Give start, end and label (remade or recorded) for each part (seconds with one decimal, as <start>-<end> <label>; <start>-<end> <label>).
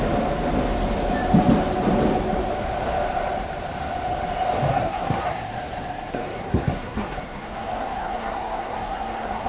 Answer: 0.0-4.7 recorded; 4.7-9.5 remade